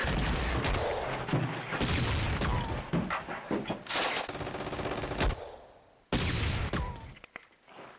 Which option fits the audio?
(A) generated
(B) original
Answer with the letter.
B